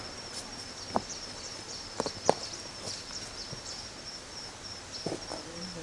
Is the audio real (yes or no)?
yes